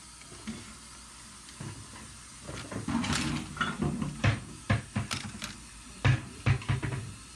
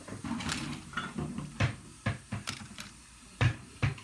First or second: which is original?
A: first